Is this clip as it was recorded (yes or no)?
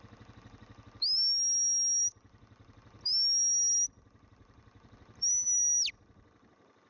yes